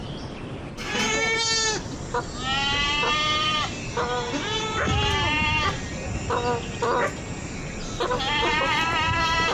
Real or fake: real